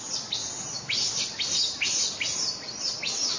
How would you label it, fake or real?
real